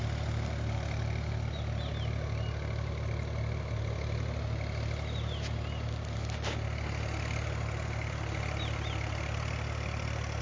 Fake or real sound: real